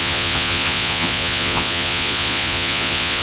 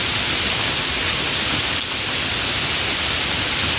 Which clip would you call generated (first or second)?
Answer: first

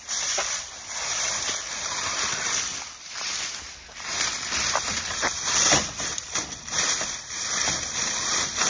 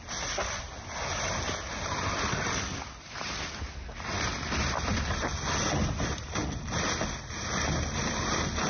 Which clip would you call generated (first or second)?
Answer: first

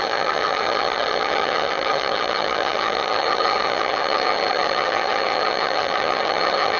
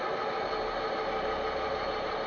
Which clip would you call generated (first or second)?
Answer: first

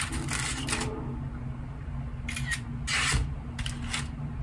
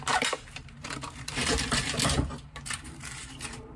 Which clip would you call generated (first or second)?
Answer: second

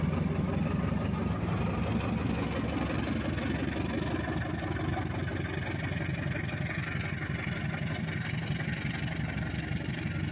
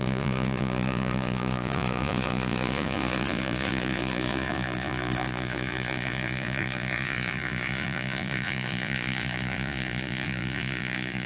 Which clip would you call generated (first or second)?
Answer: second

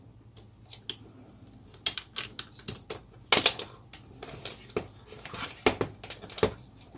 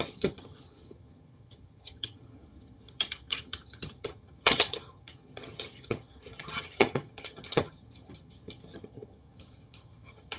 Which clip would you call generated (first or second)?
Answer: second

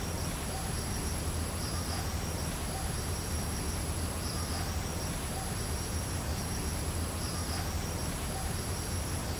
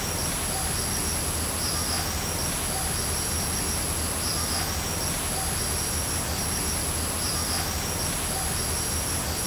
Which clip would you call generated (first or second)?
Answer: first